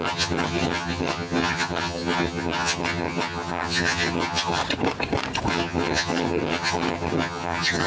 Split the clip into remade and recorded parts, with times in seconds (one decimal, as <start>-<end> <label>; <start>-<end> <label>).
0.0-4.6 remade; 4.6-5.5 recorded; 5.5-7.9 remade

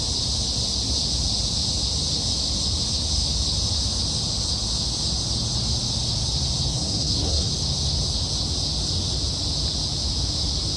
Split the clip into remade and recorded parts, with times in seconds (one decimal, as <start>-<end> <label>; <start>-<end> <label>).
0.0-6.7 recorded; 6.7-7.5 remade; 7.5-10.8 recorded

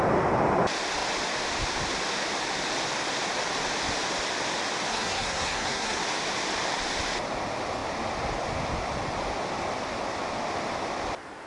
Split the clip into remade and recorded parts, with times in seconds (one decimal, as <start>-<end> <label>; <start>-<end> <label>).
0.0-4.9 recorded; 4.9-6.0 remade; 6.0-11.5 recorded

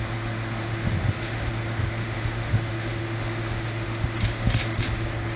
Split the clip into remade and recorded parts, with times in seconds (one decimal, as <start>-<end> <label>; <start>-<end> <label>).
0.0-0.6 recorded; 0.6-1.5 remade; 1.5-2.0 recorded; 2.0-4.9 remade; 4.9-5.4 recorded

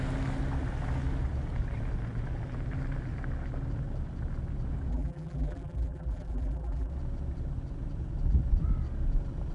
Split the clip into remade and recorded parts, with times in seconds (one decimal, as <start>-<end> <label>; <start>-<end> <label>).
0.0-4.9 recorded; 4.9-6.9 remade; 6.9-9.5 recorded